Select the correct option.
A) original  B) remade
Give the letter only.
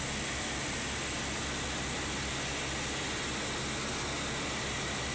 A